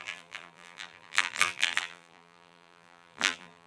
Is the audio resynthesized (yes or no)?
yes